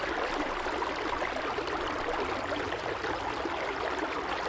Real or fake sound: real